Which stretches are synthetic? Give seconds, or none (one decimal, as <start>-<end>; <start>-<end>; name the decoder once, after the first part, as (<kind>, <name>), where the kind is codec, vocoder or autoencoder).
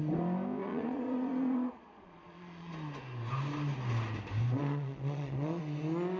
0.6-2.7 (vocoder, Vocos); 4.6-5.6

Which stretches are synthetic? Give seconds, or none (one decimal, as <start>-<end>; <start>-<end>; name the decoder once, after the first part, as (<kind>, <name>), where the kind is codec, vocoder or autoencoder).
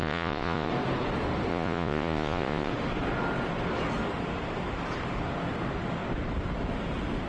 0.0-0.7 (vocoder, Vocos); 1.5-2.7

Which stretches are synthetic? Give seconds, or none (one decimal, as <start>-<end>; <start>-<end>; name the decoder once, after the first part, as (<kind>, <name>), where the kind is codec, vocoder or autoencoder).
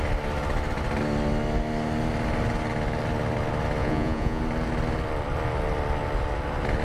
3.8-4.4 (vocoder, Vocos)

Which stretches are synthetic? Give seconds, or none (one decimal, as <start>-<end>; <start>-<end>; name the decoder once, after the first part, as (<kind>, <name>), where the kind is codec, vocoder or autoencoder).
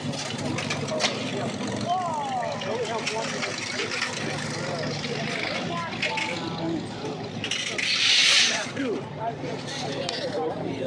8.2-8.8 (vocoder, Vocos)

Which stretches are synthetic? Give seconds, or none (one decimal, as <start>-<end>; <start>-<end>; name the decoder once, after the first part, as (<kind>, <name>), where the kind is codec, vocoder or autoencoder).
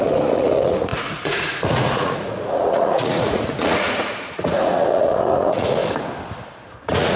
0.0-5.8 (vocoder, Vocos); 6.7-7.2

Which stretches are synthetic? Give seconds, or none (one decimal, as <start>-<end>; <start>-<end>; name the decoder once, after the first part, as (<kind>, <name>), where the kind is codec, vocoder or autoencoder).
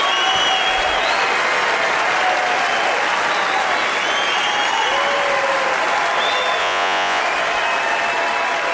6.6-7.2 (vocoder, Vocos)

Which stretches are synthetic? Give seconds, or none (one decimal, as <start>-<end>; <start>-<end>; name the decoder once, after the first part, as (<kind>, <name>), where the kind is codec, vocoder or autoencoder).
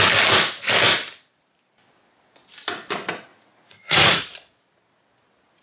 3.3-4.2 (vocoder, Vocos)